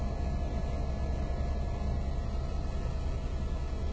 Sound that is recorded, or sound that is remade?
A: recorded